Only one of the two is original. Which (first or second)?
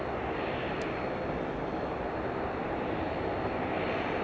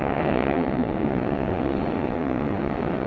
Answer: first